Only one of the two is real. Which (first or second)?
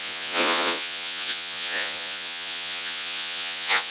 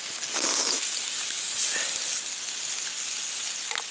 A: second